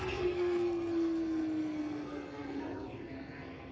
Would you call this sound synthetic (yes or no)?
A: yes